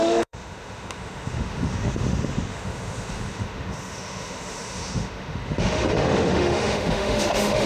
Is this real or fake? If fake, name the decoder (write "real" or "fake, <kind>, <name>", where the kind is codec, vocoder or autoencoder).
fake, autoencoder, DAC-VAE